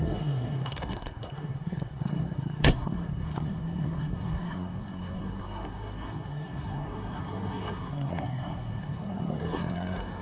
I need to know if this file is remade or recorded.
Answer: remade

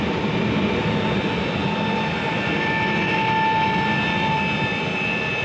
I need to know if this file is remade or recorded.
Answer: recorded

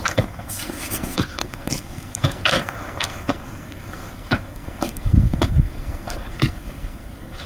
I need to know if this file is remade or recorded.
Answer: remade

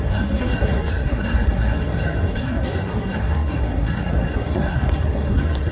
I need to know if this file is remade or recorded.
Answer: remade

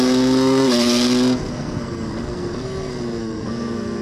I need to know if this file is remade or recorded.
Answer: remade